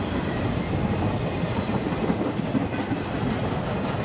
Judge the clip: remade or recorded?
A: recorded